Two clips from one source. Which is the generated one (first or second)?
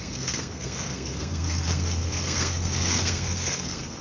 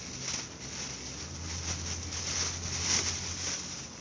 first